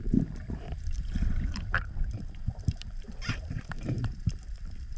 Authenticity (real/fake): fake